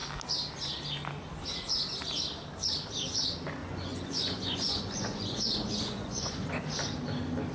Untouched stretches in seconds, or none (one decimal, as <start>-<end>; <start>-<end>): 0.0-3.6; 6.5-7.5